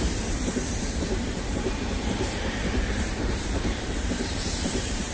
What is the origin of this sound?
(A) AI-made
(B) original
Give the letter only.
A